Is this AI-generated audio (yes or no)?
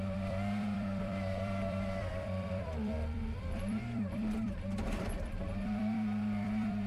yes